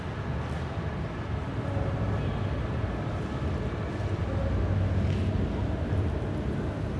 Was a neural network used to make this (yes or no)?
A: no